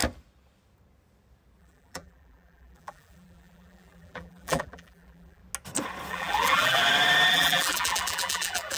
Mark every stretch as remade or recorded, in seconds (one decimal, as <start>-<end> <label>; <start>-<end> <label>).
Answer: 0.0-1.6 recorded; 1.6-5.4 remade; 5.4-6.1 recorded; 6.1-6.8 remade; 6.8-7.3 recorded; 7.3-8.8 remade